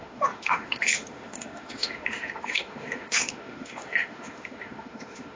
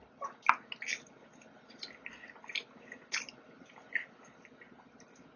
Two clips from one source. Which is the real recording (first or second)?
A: second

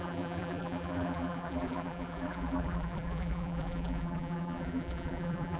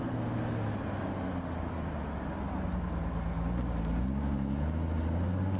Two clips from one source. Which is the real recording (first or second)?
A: second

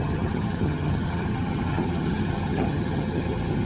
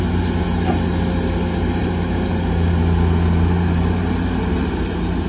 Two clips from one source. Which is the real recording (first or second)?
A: second